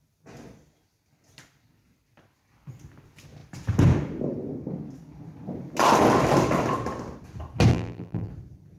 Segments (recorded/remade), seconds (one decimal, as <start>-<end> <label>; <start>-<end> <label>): 0.0-7.7 recorded; 7.7-8.3 remade; 8.3-8.8 recorded